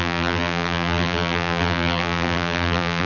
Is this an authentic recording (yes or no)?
no